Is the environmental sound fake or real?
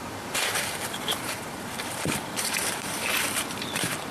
fake